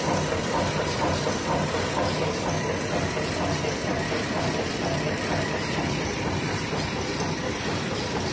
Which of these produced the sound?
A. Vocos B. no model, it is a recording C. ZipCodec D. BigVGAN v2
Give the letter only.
D